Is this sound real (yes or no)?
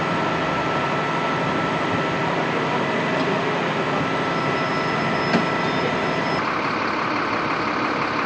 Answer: yes